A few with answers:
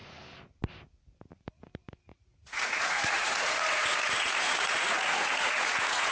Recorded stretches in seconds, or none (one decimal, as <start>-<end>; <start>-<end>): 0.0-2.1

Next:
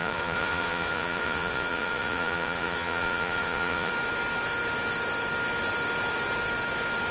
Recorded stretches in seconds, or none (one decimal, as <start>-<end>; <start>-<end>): 3.9-7.1

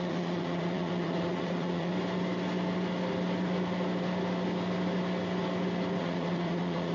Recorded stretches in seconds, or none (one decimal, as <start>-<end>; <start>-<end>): 1.9-6.0